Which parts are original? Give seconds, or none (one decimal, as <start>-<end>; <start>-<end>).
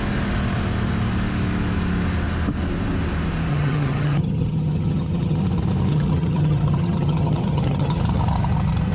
0.0-3.5; 5.4-5.9; 8.0-8.9